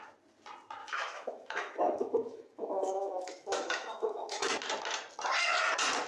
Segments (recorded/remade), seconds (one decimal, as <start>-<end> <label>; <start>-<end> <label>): 0.0-0.8 recorded; 0.8-4.5 remade; 4.5-6.1 recorded